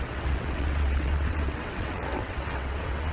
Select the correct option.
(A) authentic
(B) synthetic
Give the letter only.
B